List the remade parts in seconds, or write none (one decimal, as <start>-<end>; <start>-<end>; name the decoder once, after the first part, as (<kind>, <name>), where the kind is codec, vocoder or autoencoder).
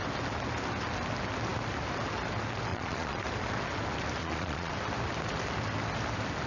2.7-3.2 (vocoder, Vocos); 4.2-4.7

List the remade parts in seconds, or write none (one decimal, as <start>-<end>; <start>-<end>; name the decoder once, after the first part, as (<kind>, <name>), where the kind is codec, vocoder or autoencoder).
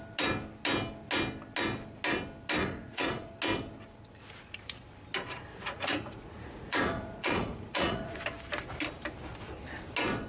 2.6-3.3 (vocoder, Vocos); 5.5-8.2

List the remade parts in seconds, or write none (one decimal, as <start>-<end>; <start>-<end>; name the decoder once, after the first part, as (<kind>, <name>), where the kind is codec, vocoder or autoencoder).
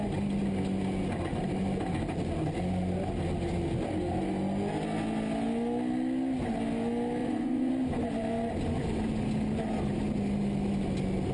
7.2-7.7 (vocoder, Vocos)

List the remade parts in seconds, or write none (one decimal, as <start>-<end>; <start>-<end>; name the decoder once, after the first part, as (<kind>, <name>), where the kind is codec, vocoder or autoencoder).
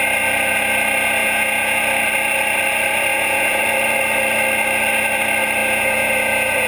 1.2-1.8 (vocoder, Vocos); 3.1-3.6; 5.6-6.7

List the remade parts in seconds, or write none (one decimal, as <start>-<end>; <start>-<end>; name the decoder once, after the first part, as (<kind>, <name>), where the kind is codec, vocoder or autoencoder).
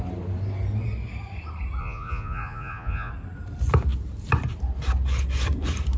1.8-3.1 (vocoder, Vocos)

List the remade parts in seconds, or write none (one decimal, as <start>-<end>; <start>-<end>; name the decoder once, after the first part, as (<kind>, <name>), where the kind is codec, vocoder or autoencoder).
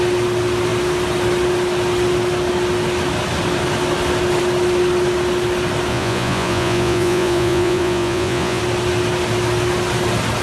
5.9-8.6 (vocoder, Vocos)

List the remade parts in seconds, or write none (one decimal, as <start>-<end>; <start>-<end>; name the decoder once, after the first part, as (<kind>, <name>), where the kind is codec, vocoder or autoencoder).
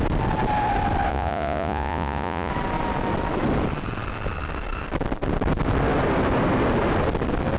1.1-2.5 (vocoder, Vocos)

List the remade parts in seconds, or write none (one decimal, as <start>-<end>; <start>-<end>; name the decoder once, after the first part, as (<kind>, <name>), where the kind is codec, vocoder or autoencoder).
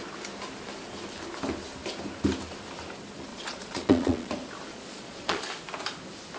3.3-4.3 (vocoder, Vocos); 4.7-5.4